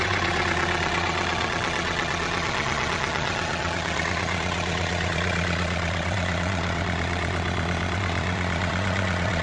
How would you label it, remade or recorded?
remade